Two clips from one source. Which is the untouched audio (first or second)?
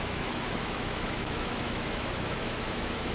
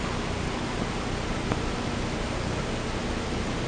second